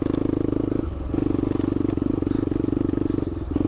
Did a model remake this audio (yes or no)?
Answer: no